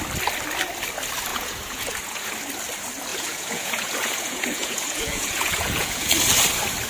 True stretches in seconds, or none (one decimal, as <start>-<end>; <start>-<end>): 0.0-1.3; 2.3-3.1; 6.1-6.9